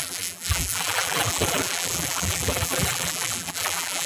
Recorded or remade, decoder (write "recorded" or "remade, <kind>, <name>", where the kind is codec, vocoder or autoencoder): remade, vocoder, BigVGAN v2